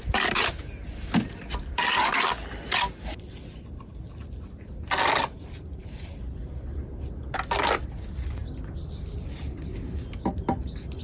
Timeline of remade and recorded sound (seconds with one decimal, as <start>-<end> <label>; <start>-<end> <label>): 0.0-11.0 recorded